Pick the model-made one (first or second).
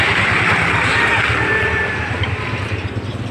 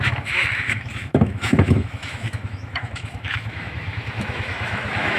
second